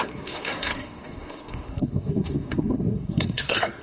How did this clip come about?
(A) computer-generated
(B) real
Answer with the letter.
A